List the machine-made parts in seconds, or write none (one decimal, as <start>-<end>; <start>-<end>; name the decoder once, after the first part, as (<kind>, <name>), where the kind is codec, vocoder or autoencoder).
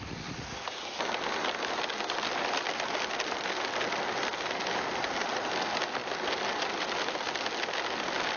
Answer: none